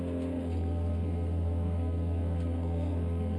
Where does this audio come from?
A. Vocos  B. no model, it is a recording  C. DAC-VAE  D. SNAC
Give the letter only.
D